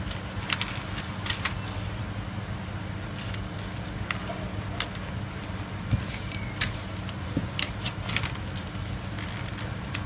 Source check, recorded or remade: recorded